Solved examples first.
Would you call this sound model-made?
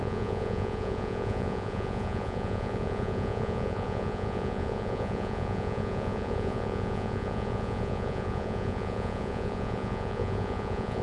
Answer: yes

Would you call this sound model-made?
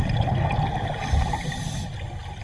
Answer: no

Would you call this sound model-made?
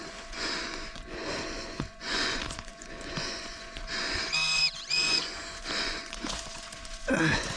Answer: yes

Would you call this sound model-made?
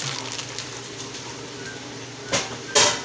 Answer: no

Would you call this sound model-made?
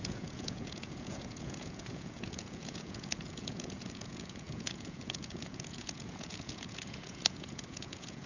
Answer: yes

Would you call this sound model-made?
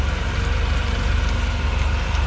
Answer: no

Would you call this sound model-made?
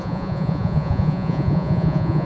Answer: yes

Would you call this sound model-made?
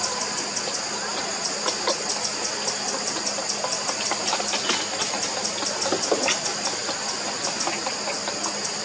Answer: no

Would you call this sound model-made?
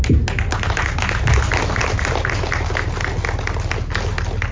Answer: no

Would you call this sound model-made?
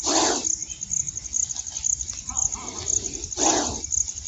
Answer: no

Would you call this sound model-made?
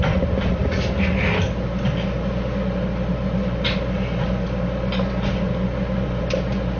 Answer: no